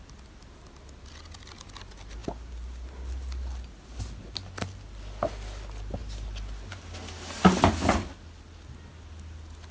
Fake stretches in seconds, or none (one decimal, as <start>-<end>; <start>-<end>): none